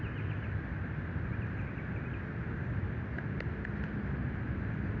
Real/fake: real